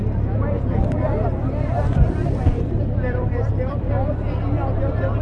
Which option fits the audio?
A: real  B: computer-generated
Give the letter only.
B